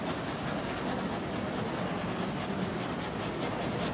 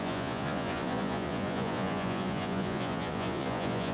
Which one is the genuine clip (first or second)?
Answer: first